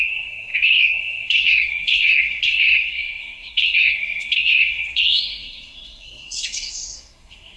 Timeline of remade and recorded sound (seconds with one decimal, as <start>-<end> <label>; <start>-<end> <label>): 0.0-7.6 remade